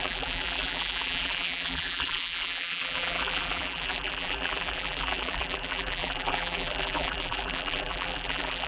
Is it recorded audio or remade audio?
remade